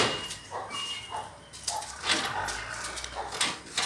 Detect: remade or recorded recorded